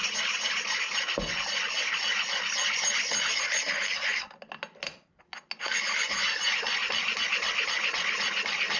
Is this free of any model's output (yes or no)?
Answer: yes